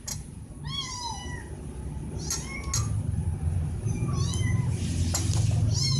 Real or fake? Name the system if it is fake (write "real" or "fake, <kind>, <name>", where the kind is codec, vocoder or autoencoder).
real